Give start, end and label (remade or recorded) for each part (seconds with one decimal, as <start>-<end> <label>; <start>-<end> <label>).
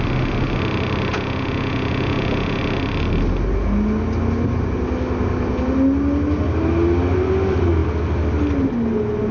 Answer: 0.0-1.1 recorded; 1.1-2.6 remade; 2.6-9.3 recorded